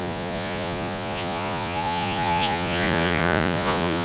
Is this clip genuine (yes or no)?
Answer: no